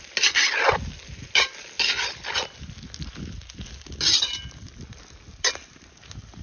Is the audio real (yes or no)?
yes